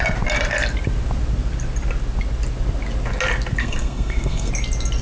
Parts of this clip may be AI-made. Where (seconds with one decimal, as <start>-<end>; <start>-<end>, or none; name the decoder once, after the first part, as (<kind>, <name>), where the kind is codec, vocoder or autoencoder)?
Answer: 3.6-4.5 (codec, SNAC)